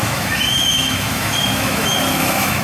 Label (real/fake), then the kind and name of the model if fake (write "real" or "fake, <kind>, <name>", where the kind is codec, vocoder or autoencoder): fake, autoencoder, DAC-VAE